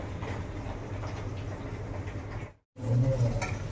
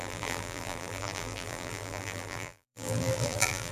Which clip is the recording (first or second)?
first